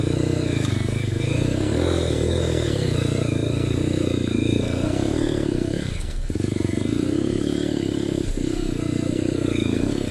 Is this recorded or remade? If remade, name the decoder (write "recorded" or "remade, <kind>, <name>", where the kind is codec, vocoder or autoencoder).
remade, codec, SNAC